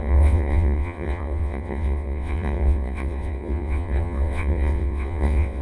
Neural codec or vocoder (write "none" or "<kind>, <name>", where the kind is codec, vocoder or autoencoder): vocoder, WaveNeXt